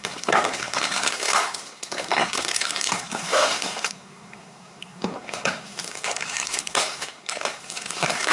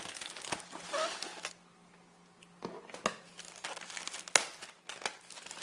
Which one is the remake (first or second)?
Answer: first